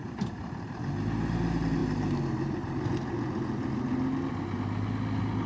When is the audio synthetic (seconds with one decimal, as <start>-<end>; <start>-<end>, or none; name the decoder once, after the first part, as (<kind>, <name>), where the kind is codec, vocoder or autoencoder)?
none